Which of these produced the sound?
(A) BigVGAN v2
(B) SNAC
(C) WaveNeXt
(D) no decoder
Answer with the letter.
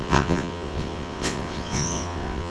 C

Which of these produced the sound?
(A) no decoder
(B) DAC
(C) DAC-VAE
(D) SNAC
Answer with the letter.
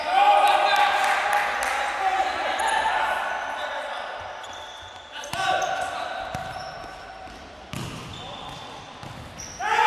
A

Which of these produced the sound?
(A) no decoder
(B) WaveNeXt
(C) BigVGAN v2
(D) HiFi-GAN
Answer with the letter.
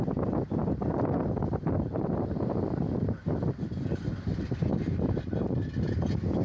A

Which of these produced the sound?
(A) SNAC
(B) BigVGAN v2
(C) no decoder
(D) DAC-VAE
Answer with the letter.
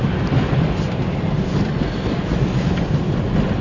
C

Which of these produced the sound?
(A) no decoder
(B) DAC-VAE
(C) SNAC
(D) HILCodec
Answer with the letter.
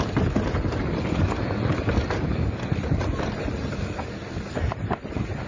A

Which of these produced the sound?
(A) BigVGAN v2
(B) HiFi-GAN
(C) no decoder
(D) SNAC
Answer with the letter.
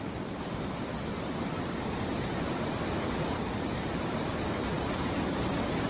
A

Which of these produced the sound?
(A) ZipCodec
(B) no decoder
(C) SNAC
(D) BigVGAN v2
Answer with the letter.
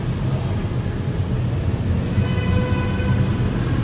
B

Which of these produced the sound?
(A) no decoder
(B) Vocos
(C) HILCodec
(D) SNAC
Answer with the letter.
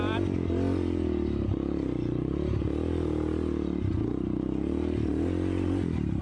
A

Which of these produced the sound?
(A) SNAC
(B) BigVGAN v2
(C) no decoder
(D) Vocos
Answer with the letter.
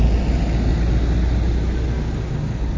C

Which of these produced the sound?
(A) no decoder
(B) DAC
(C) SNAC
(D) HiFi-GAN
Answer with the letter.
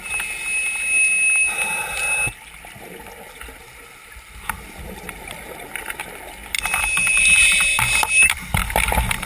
A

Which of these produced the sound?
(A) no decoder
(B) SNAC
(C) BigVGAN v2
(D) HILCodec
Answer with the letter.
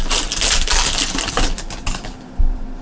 A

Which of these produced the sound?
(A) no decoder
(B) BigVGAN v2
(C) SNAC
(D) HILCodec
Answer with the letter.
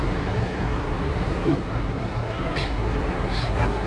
C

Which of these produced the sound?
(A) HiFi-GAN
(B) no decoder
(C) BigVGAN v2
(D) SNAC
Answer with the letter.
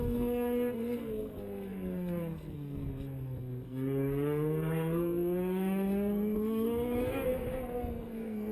D